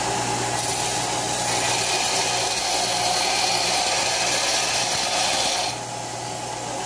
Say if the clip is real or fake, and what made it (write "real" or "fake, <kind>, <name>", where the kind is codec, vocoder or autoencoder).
real